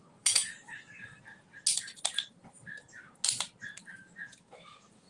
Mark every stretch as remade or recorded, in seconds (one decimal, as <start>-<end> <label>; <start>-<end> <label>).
0.0-1.1 remade; 1.1-3.7 recorded; 3.7-5.1 remade